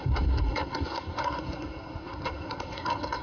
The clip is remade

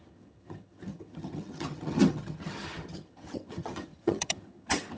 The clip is remade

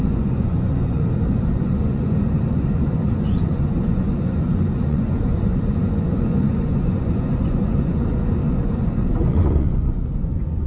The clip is remade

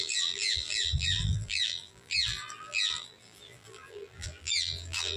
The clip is remade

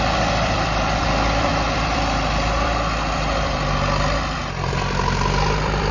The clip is remade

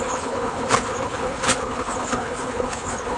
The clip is remade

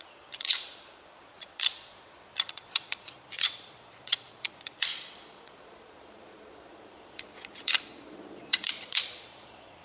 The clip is remade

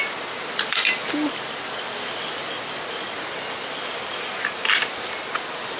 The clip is recorded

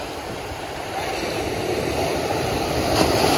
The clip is remade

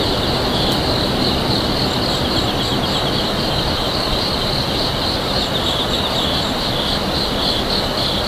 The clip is recorded